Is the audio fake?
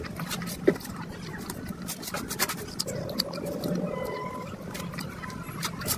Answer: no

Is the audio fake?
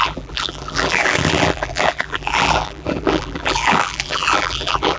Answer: yes